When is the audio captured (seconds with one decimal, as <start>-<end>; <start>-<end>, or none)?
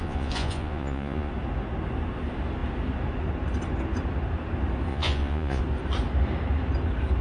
1.3-4.9; 5.6-7.2